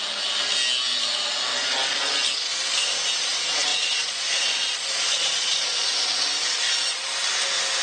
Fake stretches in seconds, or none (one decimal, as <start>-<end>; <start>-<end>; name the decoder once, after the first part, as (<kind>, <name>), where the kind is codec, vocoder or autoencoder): 3.7-6.3 (vocoder, Vocos)